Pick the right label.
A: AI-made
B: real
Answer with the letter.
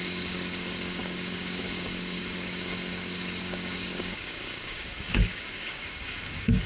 A